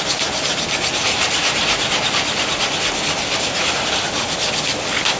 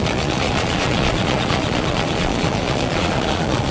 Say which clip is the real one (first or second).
first